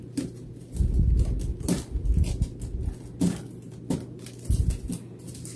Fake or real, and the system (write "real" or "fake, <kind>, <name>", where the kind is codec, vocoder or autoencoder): real